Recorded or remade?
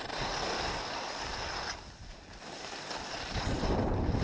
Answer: recorded